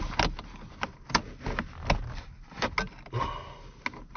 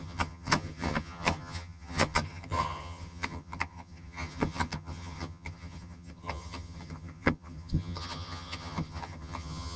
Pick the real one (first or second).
first